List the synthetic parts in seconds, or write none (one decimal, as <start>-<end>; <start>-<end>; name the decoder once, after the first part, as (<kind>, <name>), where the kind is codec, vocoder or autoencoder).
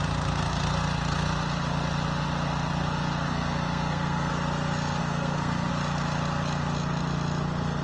3.3-4.3 (codec, SNAC); 5.0-5.7